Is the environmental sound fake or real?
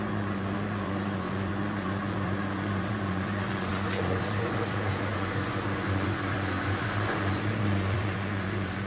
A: fake